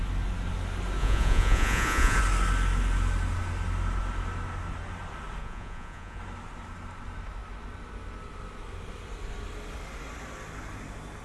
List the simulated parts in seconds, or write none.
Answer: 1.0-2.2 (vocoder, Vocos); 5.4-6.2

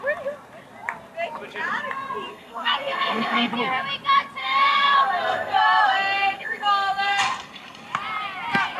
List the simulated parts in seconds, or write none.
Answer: 2.3-3.5 (codec, SNAC); 4.4-7.2